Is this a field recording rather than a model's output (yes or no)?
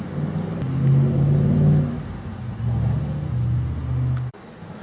yes